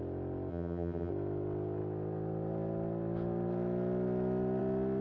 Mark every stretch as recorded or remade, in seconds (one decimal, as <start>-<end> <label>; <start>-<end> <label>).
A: 0.0-0.5 recorded; 0.5-1.1 remade; 1.1-5.0 recorded